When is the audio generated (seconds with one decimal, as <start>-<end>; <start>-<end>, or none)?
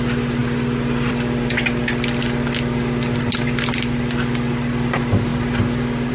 none